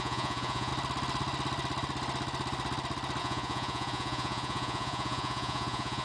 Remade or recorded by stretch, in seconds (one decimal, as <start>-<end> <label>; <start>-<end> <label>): 0.0-0.7 remade; 0.7-3.2 recorded; 3.2-6.0 remade

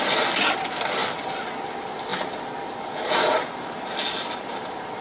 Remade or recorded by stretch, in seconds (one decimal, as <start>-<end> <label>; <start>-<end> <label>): 0.0-5.0 recorded

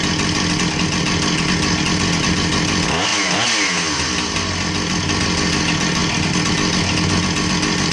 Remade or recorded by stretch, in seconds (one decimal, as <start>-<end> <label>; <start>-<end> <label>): 0.0-7.9 recorded